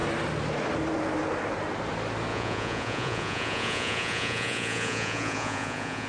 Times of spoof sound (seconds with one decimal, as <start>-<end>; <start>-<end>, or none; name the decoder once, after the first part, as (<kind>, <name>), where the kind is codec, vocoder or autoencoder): 2.3-6.1 (vocoder, Vocos)